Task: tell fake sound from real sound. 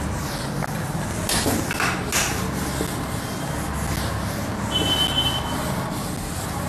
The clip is real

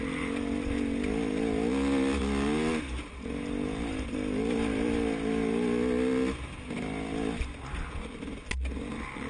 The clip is real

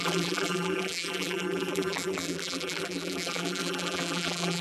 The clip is fake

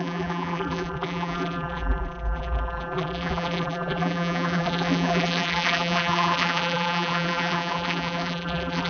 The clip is fake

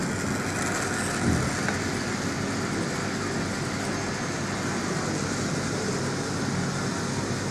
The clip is real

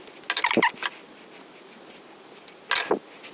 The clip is real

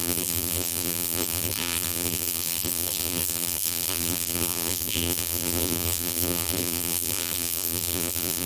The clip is fake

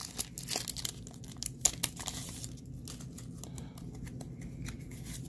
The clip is real